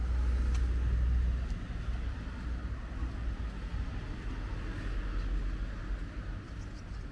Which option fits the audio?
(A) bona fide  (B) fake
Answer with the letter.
A